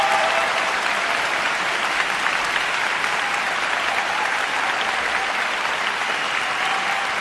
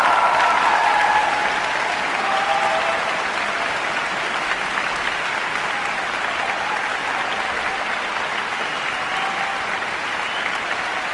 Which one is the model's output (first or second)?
first